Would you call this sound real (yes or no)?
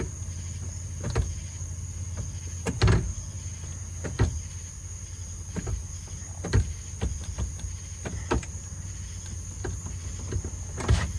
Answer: yes